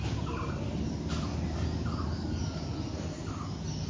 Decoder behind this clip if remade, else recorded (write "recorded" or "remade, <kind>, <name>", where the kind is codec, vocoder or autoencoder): recorded